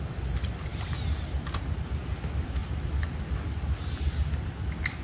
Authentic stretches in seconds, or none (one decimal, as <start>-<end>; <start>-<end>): 0.0-5.0